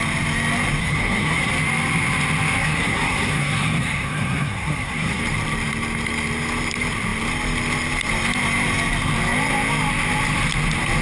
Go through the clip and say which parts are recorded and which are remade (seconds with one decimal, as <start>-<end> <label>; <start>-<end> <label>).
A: 0.0-0.8 recorded; 0.8-1.5 remade; 1.5-2.6 recorded; 2.6-5.2 remade; 5.2-11.0 recorded